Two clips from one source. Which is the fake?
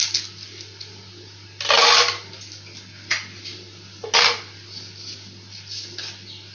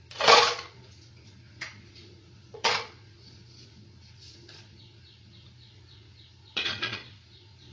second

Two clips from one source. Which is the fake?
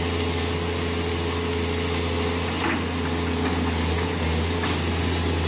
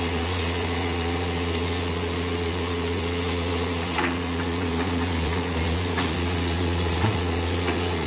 second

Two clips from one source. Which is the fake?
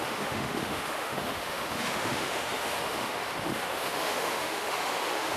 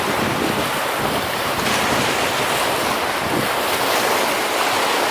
first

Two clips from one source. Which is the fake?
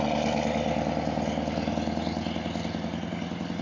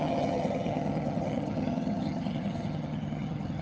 second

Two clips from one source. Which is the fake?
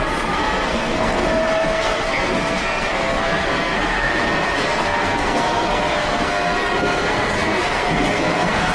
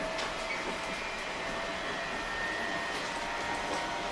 first